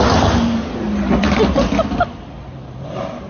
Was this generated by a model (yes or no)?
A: no